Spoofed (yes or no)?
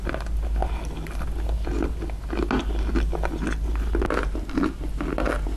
no